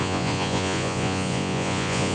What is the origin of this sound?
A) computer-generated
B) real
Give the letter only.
A